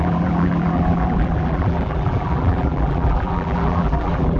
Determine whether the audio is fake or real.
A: fake